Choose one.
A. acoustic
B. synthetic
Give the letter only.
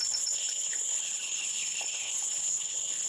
B